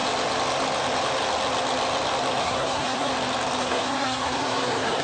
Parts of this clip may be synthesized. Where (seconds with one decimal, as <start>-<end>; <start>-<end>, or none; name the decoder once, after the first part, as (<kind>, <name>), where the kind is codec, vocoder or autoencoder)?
2.4-3.1 (codec, SNAC); 3.6-5.0